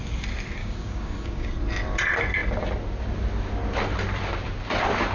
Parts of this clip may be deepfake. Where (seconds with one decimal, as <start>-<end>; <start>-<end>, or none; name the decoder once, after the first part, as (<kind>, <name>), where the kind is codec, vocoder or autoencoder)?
0.6-1.5 (codec, DAC)